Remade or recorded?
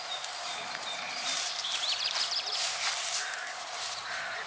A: remade